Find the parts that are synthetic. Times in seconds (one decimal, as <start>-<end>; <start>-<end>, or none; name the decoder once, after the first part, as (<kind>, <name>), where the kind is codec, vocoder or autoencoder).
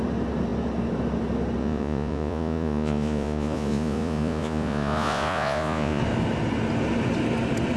1.6-6.0 (vocoder, Vocos)